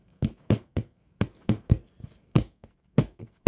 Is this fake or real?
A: fake